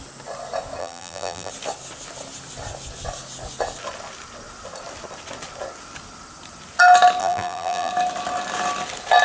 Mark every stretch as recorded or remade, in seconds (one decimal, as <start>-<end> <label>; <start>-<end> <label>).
0.0-0.8 recorded; 0.8-1.5 remade; 1.5-7.2 recorded; 7.2-7.9 remade; 7.9-9.2 recorded